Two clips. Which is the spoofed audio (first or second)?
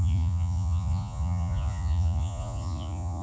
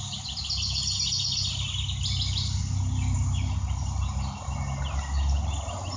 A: first